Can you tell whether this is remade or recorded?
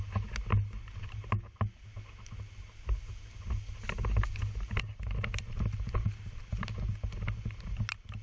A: recorded